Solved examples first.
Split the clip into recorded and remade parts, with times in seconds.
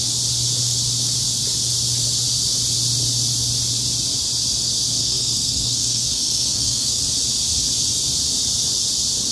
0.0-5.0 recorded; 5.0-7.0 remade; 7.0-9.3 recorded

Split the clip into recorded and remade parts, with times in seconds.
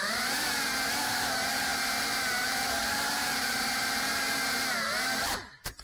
0.0-5.8 remade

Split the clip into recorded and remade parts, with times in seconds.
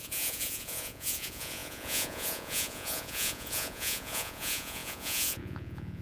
0.0-6.0 remade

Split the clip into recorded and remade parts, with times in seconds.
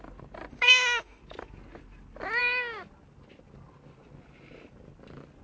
0.0-0.5 recorded; 0.5-1.2 remade; 1.2-5.4 recorded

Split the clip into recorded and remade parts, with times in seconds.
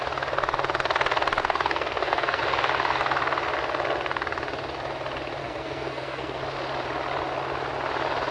0.0-1.4 recorded; 1.4-2.4 remade; 2.4-5.4 recorded; 5.4-6.4 remade; 6.4-8.3 recorded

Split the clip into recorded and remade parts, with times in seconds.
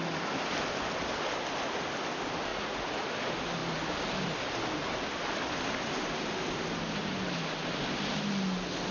0.0-2.5 recorded; 2.5-3.0 remade; 3.0-8.9 recorded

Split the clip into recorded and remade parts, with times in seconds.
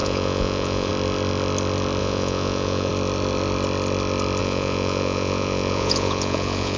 0.0-0.9 remade; 0.9-2.0 recorded; 2.0-2.9 remade; 2.9-4.4 recorded; 4.4-6.8 remade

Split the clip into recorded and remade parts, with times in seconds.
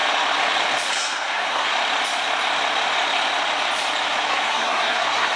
0.0-0.9 recorded; 0.9-1.7 remade; 1.7-4.3 recorded; 4.3-5.4 remade